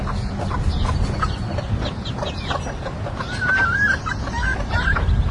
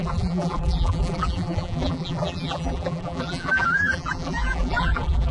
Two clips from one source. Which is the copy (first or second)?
second